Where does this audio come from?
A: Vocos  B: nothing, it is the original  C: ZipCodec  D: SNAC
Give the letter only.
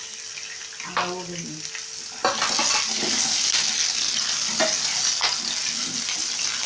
B